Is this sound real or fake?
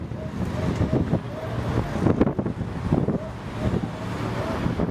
real